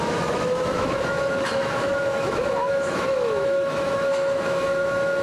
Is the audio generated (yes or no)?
yes